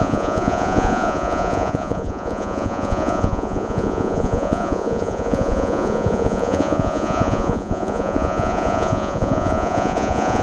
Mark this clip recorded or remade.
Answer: remade